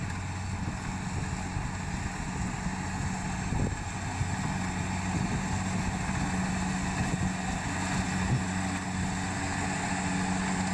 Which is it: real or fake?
real